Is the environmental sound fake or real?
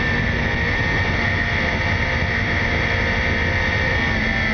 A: real